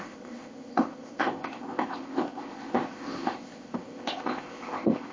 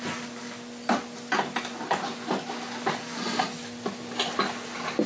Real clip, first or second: second